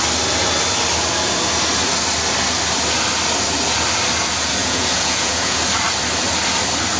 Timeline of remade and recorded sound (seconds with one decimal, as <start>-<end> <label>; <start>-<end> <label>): 0.0-4.6 recorded; 4.6-5.6 remade; 5.6-7.0 recorded